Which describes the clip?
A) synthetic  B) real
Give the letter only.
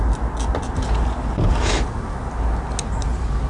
B